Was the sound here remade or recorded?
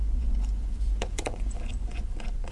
remade